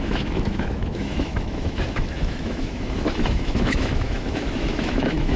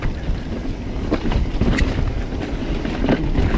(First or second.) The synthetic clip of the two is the first